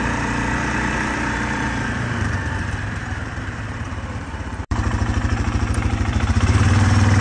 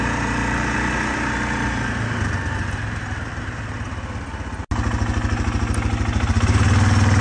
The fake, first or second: first